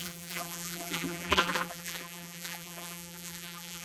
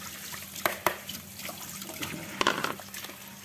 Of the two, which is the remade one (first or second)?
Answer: first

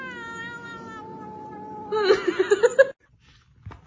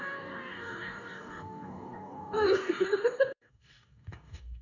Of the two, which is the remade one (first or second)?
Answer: second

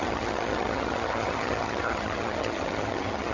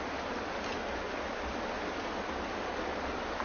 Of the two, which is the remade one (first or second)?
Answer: first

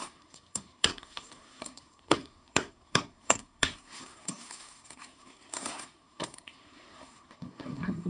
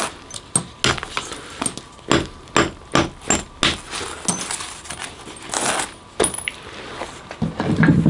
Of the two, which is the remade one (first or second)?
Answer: first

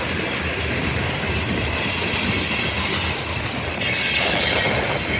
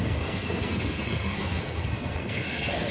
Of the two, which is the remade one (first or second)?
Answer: second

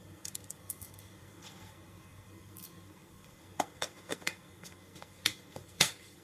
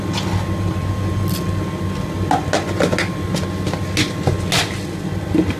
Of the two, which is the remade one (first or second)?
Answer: first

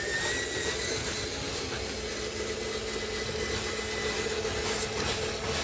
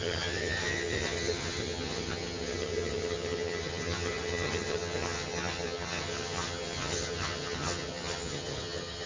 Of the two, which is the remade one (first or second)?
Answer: second